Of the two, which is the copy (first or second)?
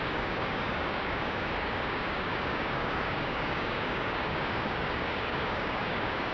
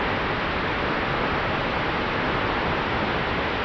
first